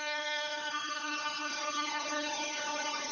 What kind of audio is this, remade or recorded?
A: remade